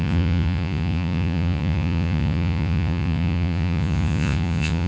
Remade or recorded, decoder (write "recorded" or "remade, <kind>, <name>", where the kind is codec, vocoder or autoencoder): remade, vocoder, Vocos